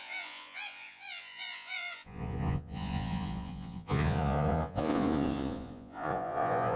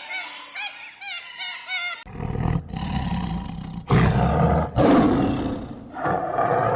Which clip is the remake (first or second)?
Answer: first